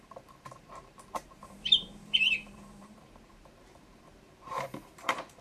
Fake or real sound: fake